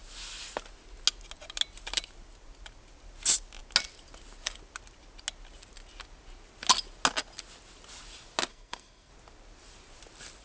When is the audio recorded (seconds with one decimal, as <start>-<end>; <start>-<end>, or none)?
0.0-8.5; 9.1-10.4